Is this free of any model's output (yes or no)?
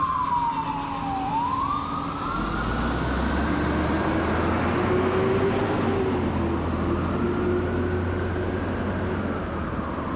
yes